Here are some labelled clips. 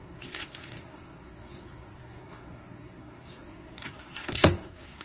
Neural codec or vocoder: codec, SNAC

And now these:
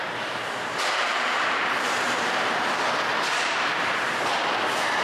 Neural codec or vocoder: vocoder, BigVGAN v2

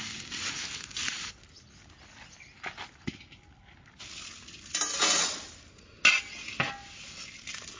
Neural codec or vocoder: none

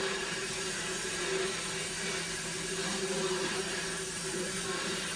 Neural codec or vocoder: vocoder, BigVGAN v2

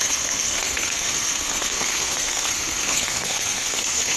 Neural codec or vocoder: codec, SNAC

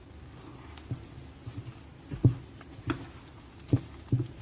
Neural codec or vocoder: none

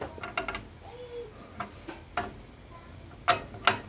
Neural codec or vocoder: none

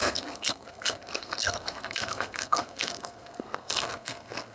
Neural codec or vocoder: codec, SNAC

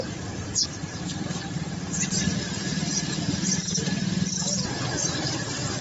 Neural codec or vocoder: none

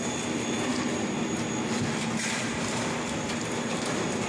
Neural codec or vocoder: vocoder, BigVGAN v2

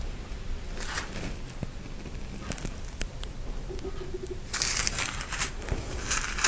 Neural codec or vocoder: none